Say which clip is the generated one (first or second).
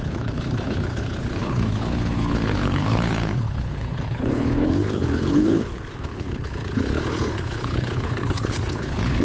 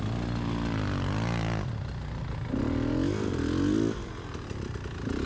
first